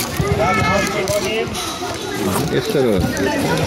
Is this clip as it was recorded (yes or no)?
no